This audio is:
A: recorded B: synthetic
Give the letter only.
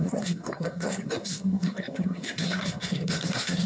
B